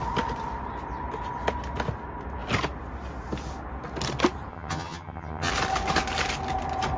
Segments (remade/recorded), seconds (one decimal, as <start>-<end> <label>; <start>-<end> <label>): 0.0-4.5 recorded; 4.5-5.5 remade; 5.5-7.0 recorded